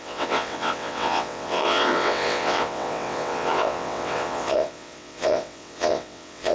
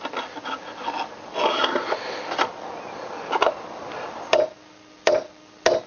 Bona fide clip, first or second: second